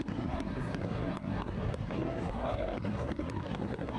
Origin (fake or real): fake